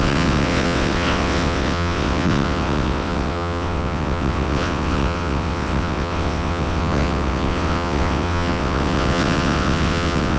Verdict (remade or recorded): remade